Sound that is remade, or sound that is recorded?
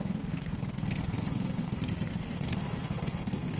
remade